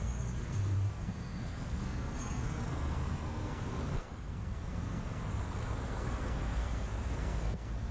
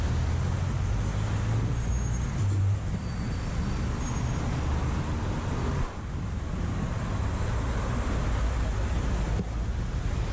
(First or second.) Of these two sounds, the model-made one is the first